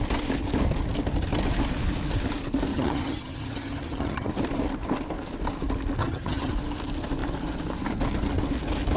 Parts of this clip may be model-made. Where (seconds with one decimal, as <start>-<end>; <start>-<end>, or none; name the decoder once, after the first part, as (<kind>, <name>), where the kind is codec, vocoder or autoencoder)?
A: 2.7-4.3 (vocoder, HiFi-GAN); 6.0-6.5